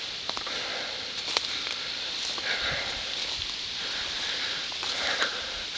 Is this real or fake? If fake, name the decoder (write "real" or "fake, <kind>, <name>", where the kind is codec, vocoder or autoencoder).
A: fake, vocoder, BigVGAN v2